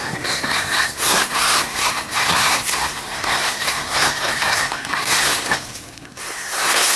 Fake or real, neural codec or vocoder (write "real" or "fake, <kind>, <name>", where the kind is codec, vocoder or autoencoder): fake, codec, SNAC